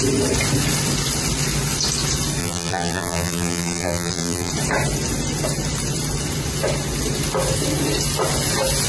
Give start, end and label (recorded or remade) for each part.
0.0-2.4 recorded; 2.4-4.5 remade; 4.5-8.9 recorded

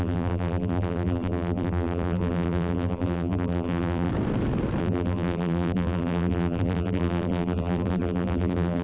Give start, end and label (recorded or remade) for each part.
0.0-4.1 remade; 4.1-4.8 recorded; 4.8-8.8 remade

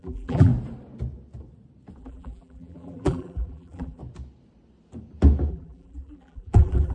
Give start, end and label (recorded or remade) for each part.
0.0-0.5 remade; 0.5-2.0 recorded; 2.0-4.0 remade; 4.0-5.5 recorded; 5.5-6.9 remade

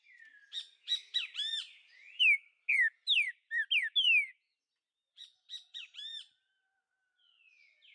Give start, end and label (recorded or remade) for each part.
0.0-7.9 recorded

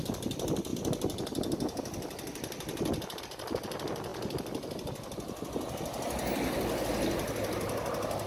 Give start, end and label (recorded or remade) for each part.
0.0-0.7 remade; 0.7-3.2 recorded; 3.2-4.1 remade; 4.1-8.3 recorded

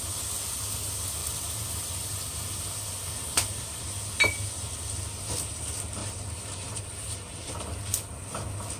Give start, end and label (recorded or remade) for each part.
0.0-1.2 recorded; 1.2-3.9 remade; 3.9-6.0 recorded; 6.0-7.5 remade; 7.5-8.8 recorded

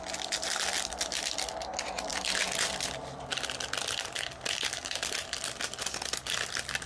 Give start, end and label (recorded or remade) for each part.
0.0-6.9 recorded